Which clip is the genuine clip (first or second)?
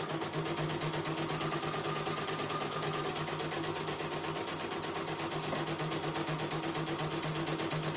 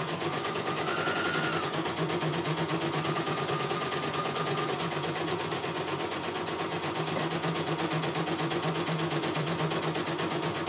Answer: first